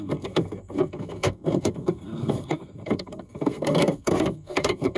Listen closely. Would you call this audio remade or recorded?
remade